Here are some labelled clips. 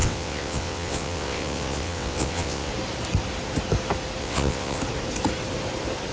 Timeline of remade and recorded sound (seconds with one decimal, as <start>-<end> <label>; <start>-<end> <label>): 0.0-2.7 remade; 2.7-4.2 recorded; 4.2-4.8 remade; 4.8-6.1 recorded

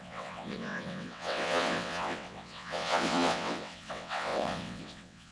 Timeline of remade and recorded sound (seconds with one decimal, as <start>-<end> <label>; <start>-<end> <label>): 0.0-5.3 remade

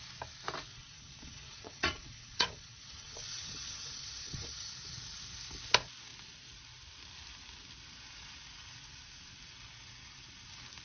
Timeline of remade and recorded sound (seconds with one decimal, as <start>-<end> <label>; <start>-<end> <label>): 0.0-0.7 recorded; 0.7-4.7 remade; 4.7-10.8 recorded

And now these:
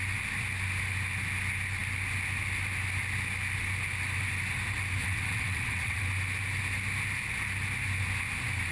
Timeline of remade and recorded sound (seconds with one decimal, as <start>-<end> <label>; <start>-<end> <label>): 0.0-5.0 recorded; 5.0-6.0 remade; 6.0-8.7 recorded

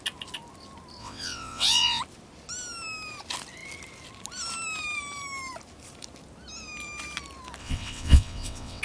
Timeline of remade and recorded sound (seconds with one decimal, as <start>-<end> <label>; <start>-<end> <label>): 0.0-1.0 recorded; 1.0-2.0 remade; 2.0-7.6 recorded; 7.6-8.8 remade

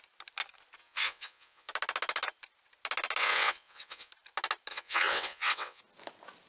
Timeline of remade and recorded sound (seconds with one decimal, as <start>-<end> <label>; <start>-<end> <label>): 0.0-0.8 recorded; 0.8-1.7 remade; 1.7-3.2 recorded; 3.2-4.1 remade; 4.1-4.7 recorded; 4.7-5.8 remade; 5.8-6.5 recorded